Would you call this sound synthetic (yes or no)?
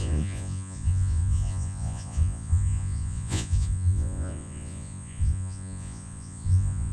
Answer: yes